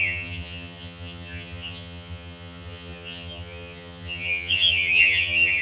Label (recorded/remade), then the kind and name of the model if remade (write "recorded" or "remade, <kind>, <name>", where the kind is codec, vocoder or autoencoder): remade, vocoder, HiFi-GAN